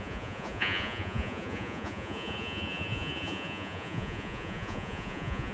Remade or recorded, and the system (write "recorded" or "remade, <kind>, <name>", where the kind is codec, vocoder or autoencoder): remade, vocoder, Vocos